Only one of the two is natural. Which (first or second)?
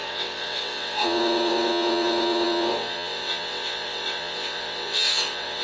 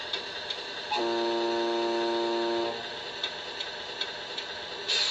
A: second